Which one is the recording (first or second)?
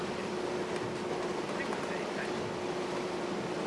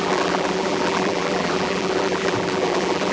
first